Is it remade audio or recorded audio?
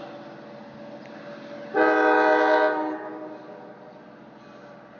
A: recorded